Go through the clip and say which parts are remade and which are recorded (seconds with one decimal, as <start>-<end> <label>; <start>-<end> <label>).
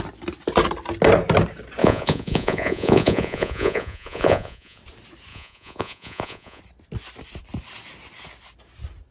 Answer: 0.0-1.8 recorded; 1.8-4.8 remade; 4.8-5.3 recorded; 5.3-6.6 remade; 6.6-9.1 recorded